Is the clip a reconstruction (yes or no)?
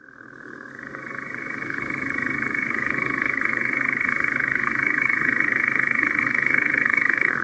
yes